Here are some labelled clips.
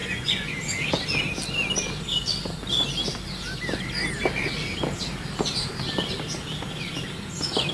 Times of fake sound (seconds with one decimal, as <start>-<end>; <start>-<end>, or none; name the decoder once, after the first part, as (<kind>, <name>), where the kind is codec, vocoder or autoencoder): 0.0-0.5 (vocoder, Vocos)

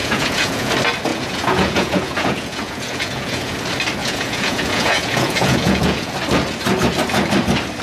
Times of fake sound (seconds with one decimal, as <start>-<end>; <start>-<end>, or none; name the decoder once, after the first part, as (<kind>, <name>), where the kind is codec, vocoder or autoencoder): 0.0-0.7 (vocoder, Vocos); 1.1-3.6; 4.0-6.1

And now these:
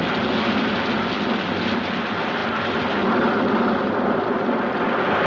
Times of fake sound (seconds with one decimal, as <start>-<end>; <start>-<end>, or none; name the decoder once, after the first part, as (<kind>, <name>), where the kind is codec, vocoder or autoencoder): none